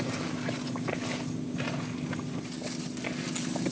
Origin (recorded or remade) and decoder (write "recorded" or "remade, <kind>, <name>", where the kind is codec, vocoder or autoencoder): recorded